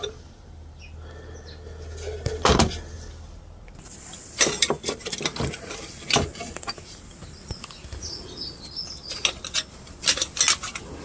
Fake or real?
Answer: real